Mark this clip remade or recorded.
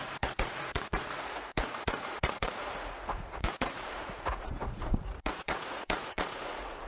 remade